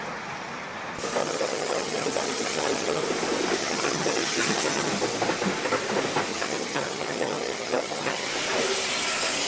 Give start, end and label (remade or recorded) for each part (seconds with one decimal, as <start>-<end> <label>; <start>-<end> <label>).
0.0-1.2 recorded; 1.2-3.0 remade; 3.0-3.6 recorded; 3.6-4.9 remade; 4.9-6.3 recorded; 6.3-8.3 remade; 8.3-9.5 recorded